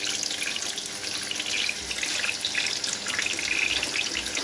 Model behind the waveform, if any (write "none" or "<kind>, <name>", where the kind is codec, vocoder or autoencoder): none